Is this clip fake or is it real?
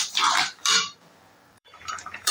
fake